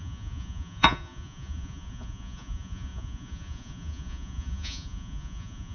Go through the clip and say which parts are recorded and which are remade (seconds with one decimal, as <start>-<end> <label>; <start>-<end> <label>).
0.0-5.7 remade